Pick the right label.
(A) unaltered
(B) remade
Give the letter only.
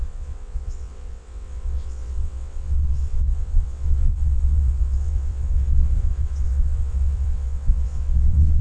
B